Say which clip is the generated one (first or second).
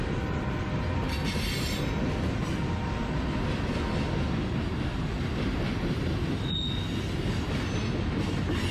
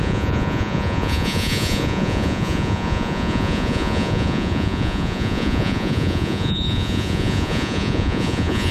second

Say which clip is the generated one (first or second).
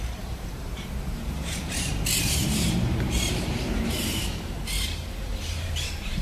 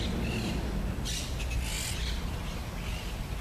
first